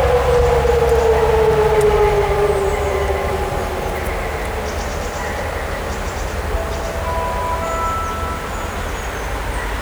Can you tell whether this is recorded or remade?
recorded